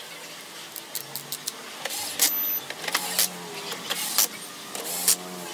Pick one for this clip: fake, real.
real